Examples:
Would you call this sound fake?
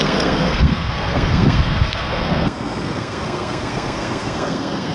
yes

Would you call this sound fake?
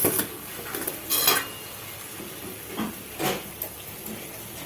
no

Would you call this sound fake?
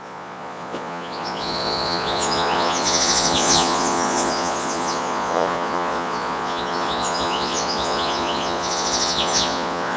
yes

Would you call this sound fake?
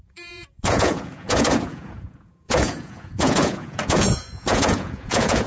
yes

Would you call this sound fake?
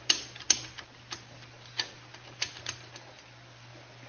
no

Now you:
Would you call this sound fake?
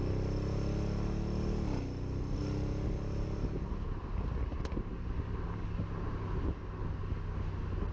no